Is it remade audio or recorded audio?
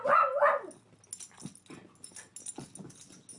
recorded